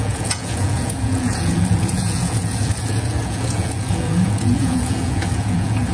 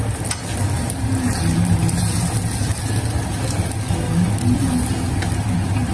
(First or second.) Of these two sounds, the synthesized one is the first